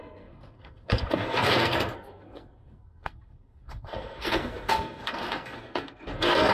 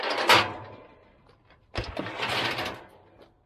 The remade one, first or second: first